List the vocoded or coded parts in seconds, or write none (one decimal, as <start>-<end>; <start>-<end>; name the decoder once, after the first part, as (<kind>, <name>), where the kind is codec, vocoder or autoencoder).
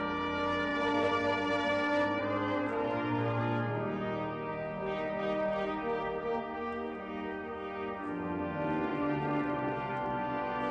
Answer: 0.7-1.7 (vocoder, BigVGAN v2); 2.2-3.4; 4.5-6.4; 8.9-9.9